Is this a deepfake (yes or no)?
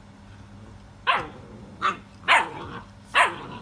no